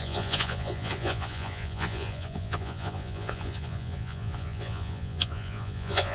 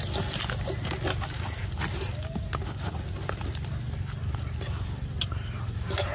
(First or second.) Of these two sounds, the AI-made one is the first